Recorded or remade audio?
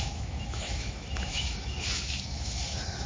remade